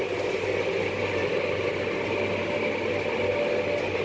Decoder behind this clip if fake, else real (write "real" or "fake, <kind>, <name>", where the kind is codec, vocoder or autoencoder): real